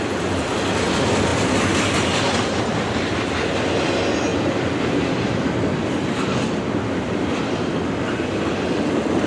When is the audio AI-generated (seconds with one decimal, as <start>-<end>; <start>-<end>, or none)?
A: none